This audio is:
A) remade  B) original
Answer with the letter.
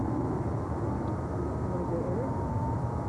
A